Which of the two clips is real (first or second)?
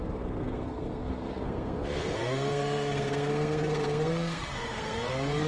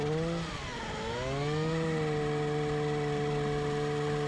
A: second